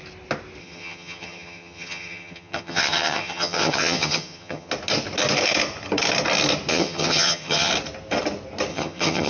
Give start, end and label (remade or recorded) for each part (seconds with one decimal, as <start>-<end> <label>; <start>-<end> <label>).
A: 0.0-0.6 recorded; 0.6-4.7 remade; 4.7-6.7 recorded; 6.7-7.7 remade; 7.7-8.7 recorded; 8.7-9.3 remade